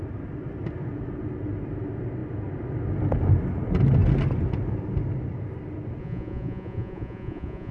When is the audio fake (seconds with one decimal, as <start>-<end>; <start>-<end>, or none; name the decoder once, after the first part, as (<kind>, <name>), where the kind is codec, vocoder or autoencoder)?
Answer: 6.0-7.7 (vocoder, Vocos)